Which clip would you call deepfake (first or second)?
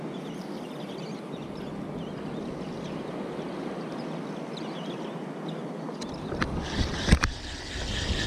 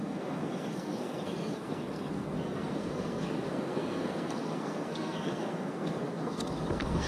second